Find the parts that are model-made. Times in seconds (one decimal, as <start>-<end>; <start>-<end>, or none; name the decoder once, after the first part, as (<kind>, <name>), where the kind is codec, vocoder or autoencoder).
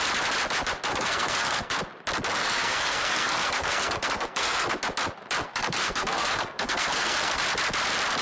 0.9-1.8 (codec, SNAC); 2.4-4.8; 5.4-7.4